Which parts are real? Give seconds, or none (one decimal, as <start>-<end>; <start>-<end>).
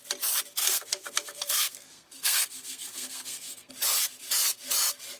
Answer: 0.0-0.6; 3.7-5.2